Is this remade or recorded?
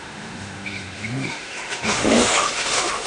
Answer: remade